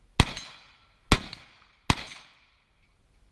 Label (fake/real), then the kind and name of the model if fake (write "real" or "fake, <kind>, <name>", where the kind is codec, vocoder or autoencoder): real